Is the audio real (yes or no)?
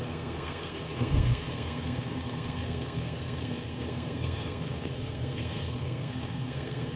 no